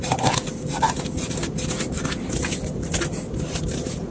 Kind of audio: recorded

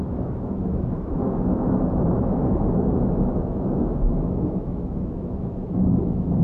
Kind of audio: remade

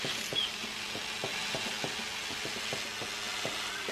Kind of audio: recorded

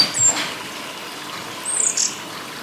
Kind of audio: recorded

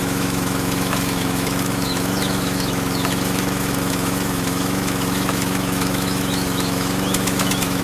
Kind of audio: remade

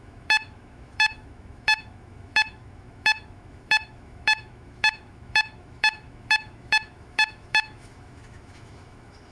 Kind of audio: remade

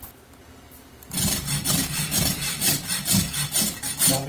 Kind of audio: recorded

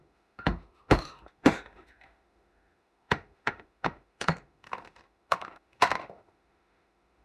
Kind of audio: remade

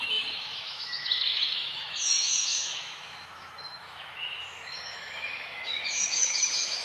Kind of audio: remade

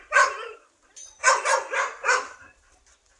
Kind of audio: recorded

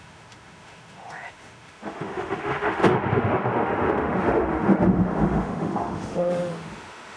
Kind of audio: remade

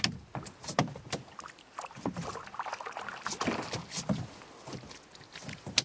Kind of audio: recorded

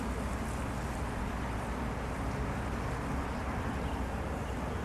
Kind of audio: recorded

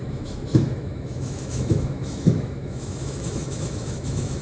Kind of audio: remade